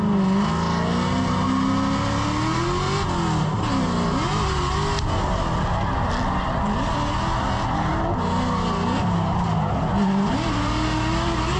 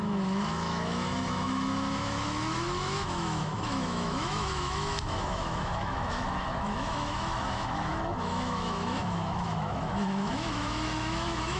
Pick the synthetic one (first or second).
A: second